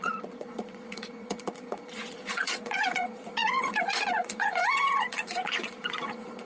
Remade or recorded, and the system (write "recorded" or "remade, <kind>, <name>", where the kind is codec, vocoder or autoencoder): remade, vocoder, Vocos